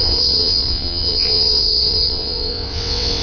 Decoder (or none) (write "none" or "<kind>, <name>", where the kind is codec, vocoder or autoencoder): vocoder, WaveNeXt